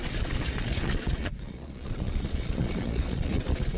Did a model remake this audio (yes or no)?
yes